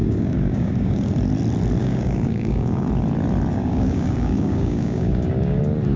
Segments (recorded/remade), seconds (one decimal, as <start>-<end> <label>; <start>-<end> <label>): 0.0-1.1 remade; 1.1-1.8 recorded; 1.8-2.9 remade; 2.9-3.5 recorded; 3.5-5.6 remade; 5.6-6.0 recorded